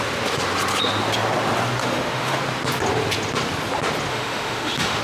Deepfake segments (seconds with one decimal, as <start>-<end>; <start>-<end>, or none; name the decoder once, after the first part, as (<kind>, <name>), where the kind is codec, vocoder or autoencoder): 1.8-2.4 (autoencoder, DAC-VAE); 4.1-5.0